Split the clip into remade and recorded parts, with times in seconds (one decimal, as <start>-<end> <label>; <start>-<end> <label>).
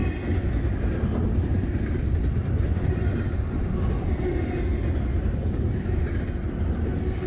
0.0-4.7 recorded; 4.7-6.0 remade; 6.0-7.3 recorded